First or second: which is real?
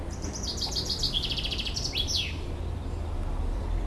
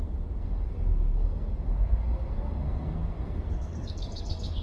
first